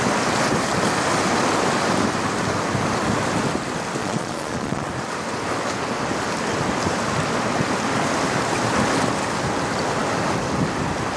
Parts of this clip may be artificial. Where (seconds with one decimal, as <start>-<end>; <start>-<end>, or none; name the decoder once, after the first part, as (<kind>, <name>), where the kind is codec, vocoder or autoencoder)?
4.0-4.9 (vocoder, Vocos)